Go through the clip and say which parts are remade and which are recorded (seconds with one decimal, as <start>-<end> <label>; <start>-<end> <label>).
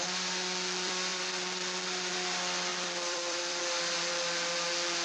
0.0-1.1 recorded; 1.1-2.1 remade; 2.1-2.7 recorded; 2.7-3.6 remade; 3.6-5.0 recorded